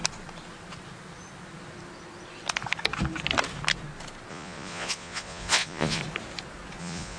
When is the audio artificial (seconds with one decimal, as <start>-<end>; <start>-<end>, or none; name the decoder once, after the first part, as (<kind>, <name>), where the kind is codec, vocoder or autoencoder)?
4.3-6.0 (vocoder, Vocos); 6.8-7.2